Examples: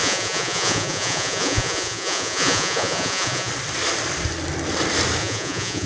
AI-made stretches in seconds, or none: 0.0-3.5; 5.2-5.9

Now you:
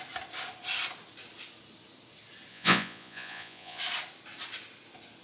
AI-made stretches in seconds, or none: 2.5-3.8

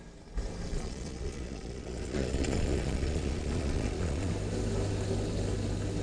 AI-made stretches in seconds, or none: 0.7-4.3

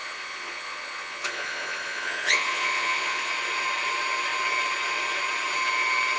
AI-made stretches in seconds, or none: 0.0-3.3